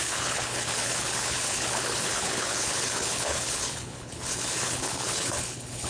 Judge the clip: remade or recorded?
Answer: remade